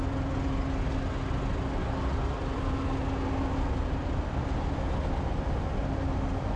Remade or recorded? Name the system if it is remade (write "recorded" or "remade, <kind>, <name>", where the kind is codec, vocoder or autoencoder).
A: recorded